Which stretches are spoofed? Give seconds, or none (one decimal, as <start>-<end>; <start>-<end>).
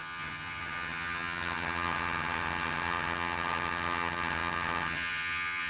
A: 0.0-5.7